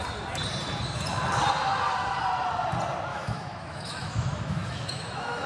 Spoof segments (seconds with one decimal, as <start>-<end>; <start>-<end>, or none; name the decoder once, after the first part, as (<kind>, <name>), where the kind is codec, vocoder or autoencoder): 3.1-5.5 (autoencoder, DAC-VAE)